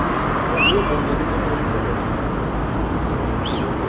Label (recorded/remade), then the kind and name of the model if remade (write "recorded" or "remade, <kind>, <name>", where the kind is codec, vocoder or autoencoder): recorded